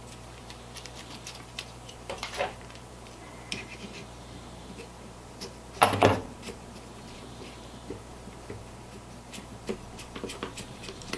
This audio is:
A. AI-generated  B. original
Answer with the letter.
A